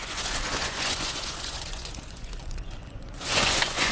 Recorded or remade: remade